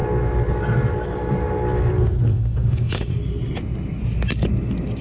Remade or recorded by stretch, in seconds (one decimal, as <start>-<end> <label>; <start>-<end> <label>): 0.0-2.3 recorded; 2.3-3.2 remade; 3.2-5.0 recorded